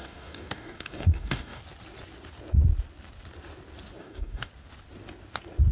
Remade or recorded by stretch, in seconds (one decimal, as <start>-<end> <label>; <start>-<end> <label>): 0.0-1.6 remade; 1.6-4.0 recorded; 4.0-4.5 remade; 4.5-5.7 recorded